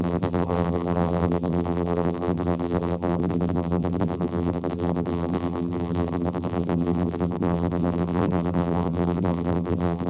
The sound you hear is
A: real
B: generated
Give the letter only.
B